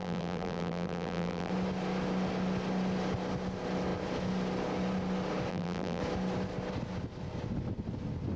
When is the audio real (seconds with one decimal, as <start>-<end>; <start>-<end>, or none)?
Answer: 1.5-5.5; 6.0-8.4